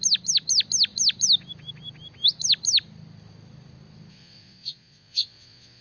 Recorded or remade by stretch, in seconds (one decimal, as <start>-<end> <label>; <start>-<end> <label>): 0.0-4.1 recorded; 4.1-5.8 remade